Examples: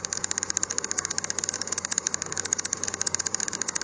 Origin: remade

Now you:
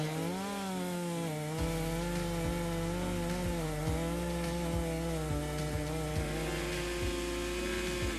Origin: recorded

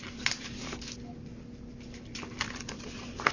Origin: recorded